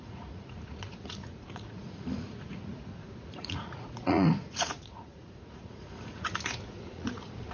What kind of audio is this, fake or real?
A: fake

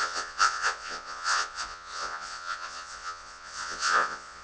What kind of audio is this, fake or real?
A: fake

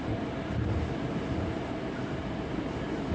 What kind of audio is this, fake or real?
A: real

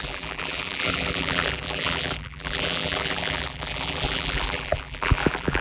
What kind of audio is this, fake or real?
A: fake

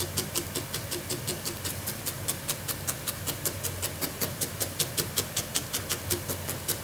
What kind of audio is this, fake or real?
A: real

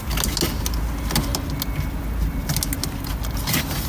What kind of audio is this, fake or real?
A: real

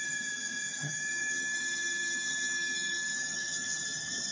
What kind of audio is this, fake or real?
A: fake